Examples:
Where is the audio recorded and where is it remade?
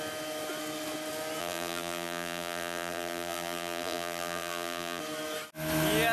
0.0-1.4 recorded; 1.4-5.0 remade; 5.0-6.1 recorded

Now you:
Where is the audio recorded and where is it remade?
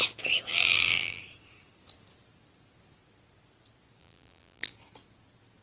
0.0-0.5 recorded; 0.5-1.2 remade; 1.2-4.0 recorded; 4.0-4.7 remade; 4.7-5.6 recorded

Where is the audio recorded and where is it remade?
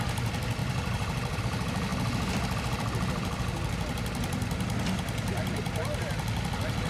0.0-0.6 recorded; 0.6-1.4 remade; 1.4-6.9 recorded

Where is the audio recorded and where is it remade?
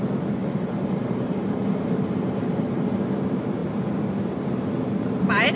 0.0-0.4 recorded; 0.4-3.0 remade; 3.0-5.6 recorded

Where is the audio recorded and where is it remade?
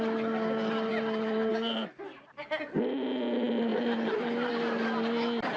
0.0-5.6 recorded